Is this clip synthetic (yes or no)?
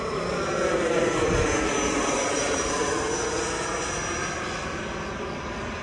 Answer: no